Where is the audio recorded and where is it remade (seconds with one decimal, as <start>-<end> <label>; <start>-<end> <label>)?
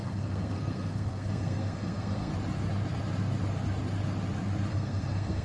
0.0-2.3 remade; 2.3-4.7 recorded; 4.7-5.4 remade